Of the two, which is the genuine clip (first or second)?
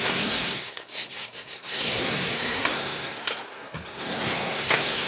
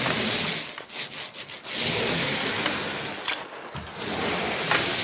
second